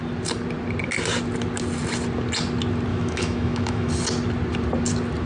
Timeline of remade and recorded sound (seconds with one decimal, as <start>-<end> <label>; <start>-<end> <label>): 0.0-2.9 recorded; 2.9-3.9 remade; 3.9-5.3 recorded